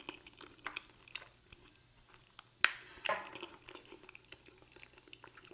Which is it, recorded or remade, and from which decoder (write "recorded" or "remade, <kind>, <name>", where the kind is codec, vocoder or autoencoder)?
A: recorded